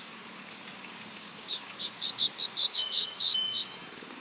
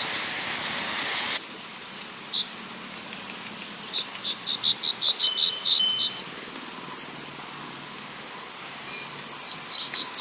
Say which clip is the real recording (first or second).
second